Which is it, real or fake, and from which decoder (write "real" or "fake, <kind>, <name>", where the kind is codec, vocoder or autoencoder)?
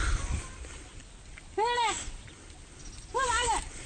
real